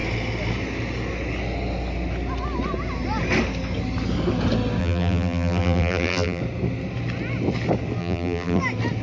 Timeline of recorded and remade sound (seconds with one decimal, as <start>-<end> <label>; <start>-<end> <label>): 0.0-4.8 recorded; 4.8-6.4 remade; 6.4-8.0 recorded; 8.0-8.6 remade; 8.6-9.0 recorded